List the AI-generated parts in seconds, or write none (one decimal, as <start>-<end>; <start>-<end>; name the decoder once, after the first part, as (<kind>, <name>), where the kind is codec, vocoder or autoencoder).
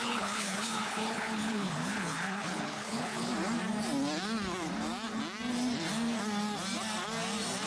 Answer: 0.0-3.3 (codec, HILCodec)